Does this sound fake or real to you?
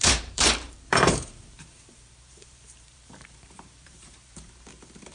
fake